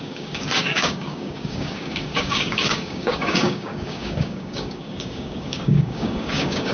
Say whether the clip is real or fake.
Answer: fake